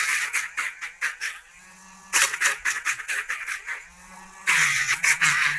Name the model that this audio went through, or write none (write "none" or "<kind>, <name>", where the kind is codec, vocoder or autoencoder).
vocoder, WaveNeXt